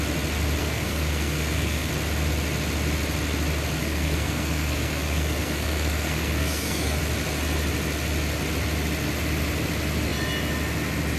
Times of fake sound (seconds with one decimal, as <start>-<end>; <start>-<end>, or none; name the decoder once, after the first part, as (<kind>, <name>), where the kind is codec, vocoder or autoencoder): 0.6-1.9 (codec, SNAC); 3.8-7.0